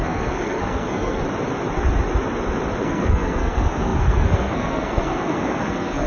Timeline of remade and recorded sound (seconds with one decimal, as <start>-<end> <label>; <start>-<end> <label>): 0.0-1.2 remade; 1.2-2.8 recorded; 2.8-6.1 remade